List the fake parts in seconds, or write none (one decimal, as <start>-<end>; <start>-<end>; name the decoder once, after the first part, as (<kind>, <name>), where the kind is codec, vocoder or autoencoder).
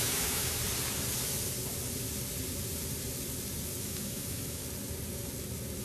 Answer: 0.0-0.6 (autoencoder, DAC-VAE); 3.8-4.6